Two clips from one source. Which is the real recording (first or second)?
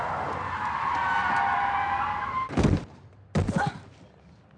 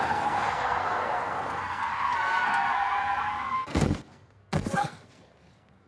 first